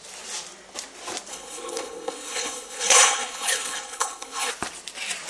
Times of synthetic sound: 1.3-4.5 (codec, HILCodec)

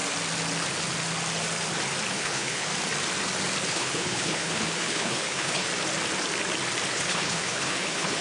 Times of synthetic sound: 2.1-2.7 (codec, HILCodec); 3.7-5.7; 6.9-8.2

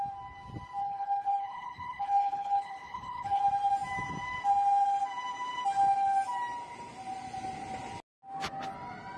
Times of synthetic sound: 0.8-3.4 (codec, HILCodec)

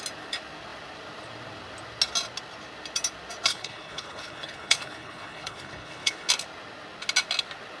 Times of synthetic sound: 3.5-6.3 (codec, HILCodec)

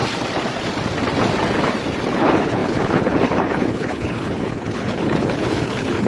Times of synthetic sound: 2.1-6.1 (codec, HILCodec)

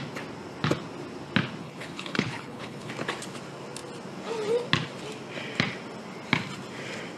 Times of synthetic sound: 1.6-2.9 (codec, HILCodec)

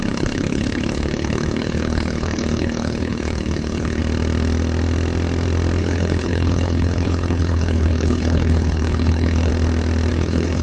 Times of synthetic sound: 0.0-4.0 (codec, HILCodec); 5.8-9.5; 10.1-10.6

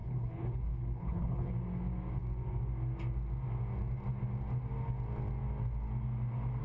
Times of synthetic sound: 0.0-1.5 (codec, HILCodec)